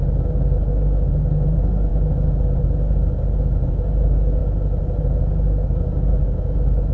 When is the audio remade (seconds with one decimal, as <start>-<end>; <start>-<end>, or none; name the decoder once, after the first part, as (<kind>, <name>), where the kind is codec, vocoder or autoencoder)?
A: none